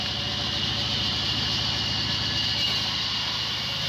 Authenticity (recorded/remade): recorded